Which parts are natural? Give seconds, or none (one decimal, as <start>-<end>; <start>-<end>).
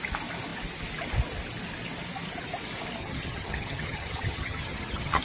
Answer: 0.0-3.0